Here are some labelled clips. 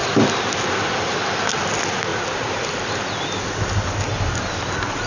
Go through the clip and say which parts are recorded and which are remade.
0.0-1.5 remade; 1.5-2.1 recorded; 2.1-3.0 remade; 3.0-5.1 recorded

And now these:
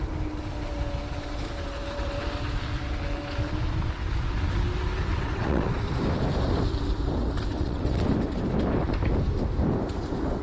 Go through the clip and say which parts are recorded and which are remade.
0.0-5.1 recorded; 5.1-5.7 remade; 5.7-7.5 recorded; 7.5-8.1 remade; 8.1-10.4 recorded

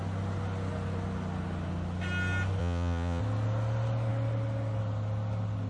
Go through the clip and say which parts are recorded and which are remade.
0.0-2.6 recorded; 2.6-3.2 remade; 3.2-5.7 recorded

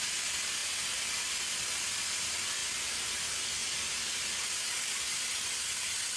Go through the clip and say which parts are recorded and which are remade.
0.0-6.2 recorded

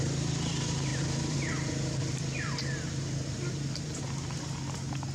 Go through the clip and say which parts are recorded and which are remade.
0.0-0.9 recorded; 0.9-4.0 remade; 4.0-5.1 recorded

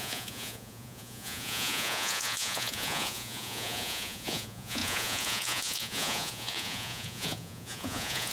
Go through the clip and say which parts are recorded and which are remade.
0.0-8.3 remade

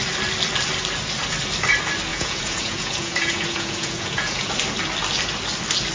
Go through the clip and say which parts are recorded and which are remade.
0.0-2.1 recorded; 2.1-4.5 remade; 4.5-5.9 recorded